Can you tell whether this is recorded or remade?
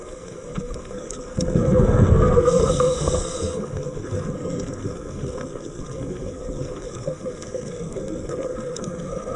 remade